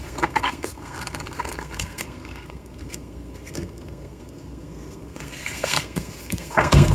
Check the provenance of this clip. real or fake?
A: fake